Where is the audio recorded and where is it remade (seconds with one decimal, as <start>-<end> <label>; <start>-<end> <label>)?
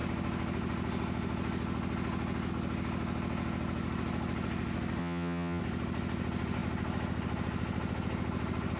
0.0-5.0 recorded; 5.0-5.6 remade; 5.6-8.8 recorded